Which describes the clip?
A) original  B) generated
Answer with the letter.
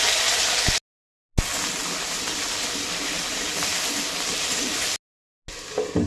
A